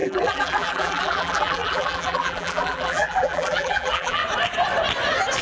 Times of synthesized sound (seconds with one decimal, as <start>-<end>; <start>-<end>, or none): 0.0-4.2